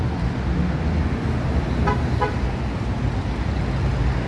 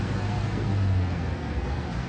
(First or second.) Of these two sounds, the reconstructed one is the second